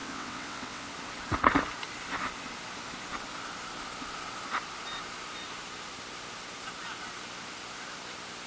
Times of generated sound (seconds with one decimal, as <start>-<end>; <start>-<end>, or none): 0.0-0.9